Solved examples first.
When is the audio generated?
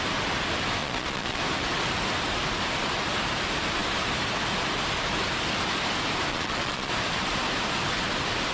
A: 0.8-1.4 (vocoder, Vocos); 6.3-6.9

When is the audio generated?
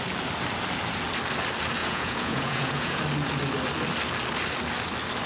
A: 1.8-3.0 (vocoder, Vocos)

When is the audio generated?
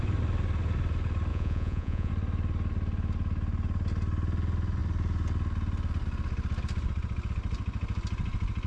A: 1.3-2.1 (vocoder, Vocos)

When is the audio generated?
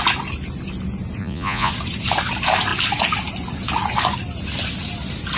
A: 1.2-1.7 (vocoder, Vocos)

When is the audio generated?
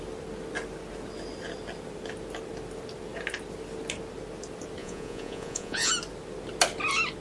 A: 4.8-5.9 (vocoder, Vocos)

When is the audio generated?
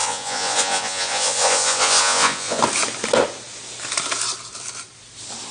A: 0.0-2.6 (vocoder, Vocos)